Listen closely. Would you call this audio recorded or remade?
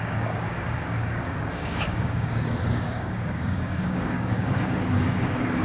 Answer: remade